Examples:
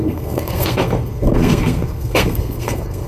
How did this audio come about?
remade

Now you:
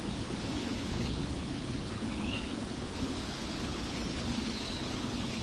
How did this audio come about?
remade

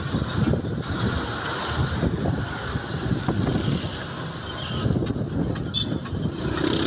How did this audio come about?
recorded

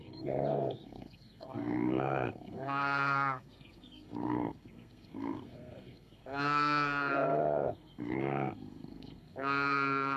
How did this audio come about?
remade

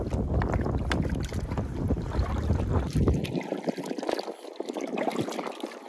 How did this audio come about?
recorded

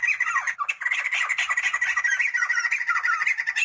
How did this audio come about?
recorded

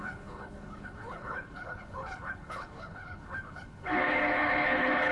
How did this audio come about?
remade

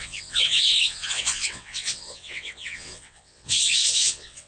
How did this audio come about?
remade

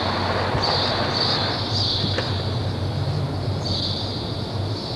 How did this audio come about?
recorded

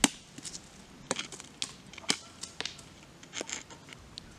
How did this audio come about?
recorded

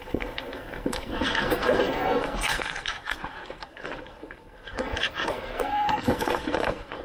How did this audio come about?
remade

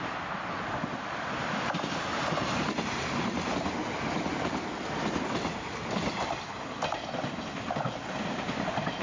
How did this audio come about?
recorded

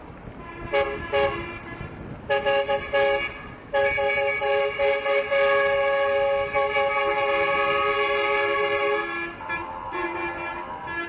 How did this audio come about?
recorded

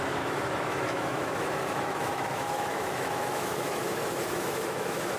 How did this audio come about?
remade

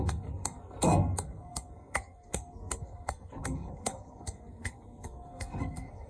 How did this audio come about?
remade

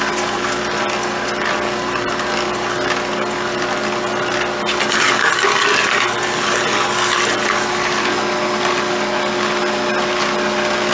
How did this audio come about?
recorded